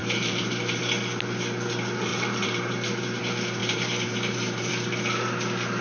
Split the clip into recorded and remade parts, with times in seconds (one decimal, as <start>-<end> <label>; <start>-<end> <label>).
0.0-0.8 remade; 0.8-2.1 recorded; 2.1-3.2 remade; 3.2-3.6 recorded; 3.6-4.7 remade; 4.7-5.8 recorded